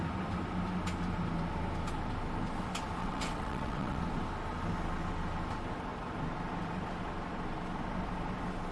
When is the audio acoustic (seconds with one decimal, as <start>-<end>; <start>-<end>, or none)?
0.0-3.0; 4.0-8.7